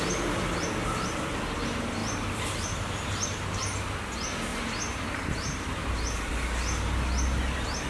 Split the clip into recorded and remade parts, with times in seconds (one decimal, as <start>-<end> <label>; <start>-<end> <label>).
0.0-2.0 recorded; 2.0-3.6 remade; 3.6-4.5 recorded; 4.5-6.3 remade; 6.3-7.9 recorded

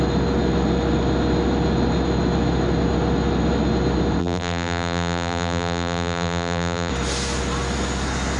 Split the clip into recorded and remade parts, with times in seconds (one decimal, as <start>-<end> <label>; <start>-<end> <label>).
0.0-4.2 recorded; 4.2-6.9 remade; 6.9-8.4 recorded

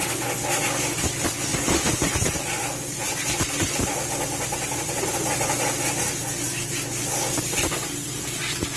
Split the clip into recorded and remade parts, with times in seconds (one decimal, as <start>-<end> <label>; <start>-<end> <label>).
0.0-1.5 recorded; 1.5-2.6 remade; 2.6-8.8 recorded

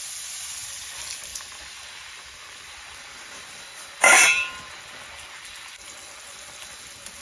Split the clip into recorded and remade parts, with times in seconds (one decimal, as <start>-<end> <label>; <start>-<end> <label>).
0.0-1.3 recorded; 1.3-4.5 remade; 4.5-7.2 recorded

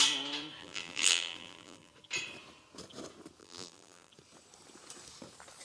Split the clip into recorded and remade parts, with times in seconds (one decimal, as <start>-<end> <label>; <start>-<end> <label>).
0.0-0.6 recorded; 0.6-1.9 remade; 1.9-3.4 recorded; 3.4-4.1 remade; 4.1-5.6 recorded

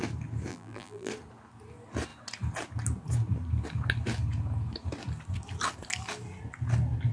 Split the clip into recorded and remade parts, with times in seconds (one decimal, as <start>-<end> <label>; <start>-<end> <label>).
0.0-0.5 recorded; 0.5-1.1 remade; 1.1-7.1 recorded

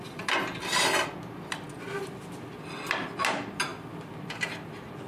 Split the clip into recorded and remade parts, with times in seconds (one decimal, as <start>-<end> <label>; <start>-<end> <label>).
0.0-3.7 recorded; 3.7-4.4 remade; 4.4-5.1 recorded